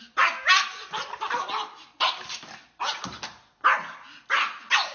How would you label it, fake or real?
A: real